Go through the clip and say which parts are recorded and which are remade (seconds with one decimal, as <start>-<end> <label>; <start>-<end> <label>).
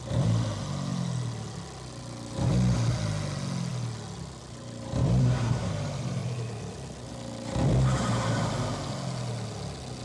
0.0-5.2 recorded; 5.2-5.7 remade; 5.7-10.0 recorded